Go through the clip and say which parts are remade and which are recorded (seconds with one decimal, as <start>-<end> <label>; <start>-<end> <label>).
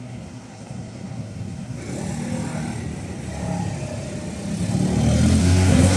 0.0-1.8 remade; 1.8-5.4 recorded; 5.4-6.0 remade